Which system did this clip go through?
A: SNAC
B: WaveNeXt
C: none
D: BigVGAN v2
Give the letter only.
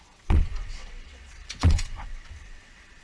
B